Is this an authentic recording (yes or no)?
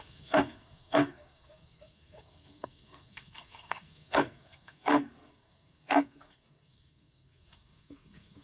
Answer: no